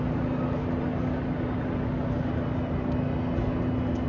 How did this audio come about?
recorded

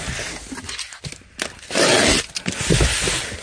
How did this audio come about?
recorded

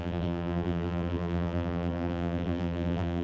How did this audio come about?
remade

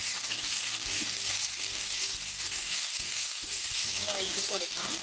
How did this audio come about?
remade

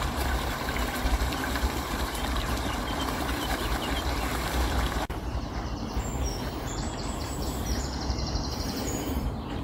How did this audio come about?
remade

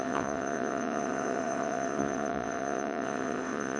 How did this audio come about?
remade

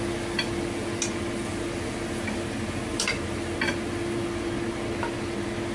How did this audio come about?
recorded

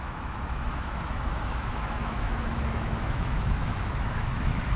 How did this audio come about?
remade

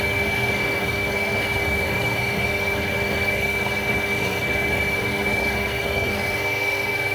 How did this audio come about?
remade